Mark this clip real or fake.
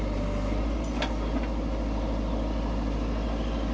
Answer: real